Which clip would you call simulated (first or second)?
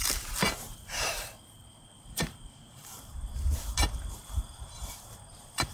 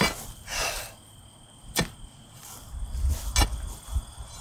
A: first